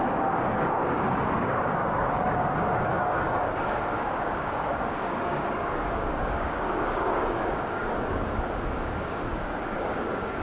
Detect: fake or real fake